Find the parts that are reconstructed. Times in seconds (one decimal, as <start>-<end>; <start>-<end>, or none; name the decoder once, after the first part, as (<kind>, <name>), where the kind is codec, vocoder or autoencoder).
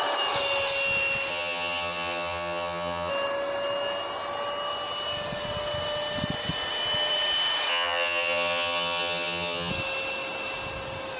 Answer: 1.3-3.1 (vocoder, HiFi-GAN); 7.7-9.7